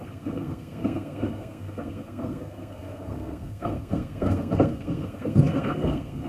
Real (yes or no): no